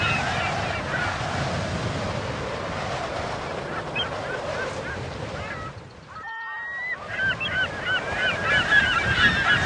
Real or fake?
real